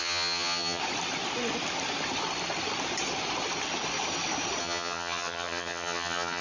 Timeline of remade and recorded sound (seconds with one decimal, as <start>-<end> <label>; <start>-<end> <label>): 0.0-0.8 remade; 0.8-4.6 recorded; 4.6-6.4 remade